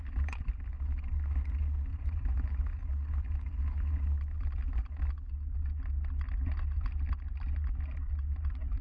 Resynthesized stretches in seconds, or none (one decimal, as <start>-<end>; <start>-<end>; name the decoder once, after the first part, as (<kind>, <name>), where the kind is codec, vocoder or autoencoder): 1.9-2.8 (vocoder, BigVGAN v2)